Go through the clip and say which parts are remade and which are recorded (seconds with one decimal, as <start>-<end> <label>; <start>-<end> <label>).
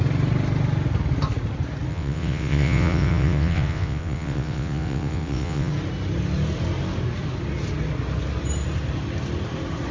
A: 0.0-1.9 recorded; 1.9-5.7 remade; 5.7-9.9 recorded